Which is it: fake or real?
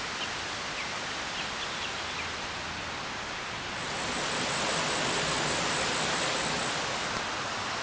real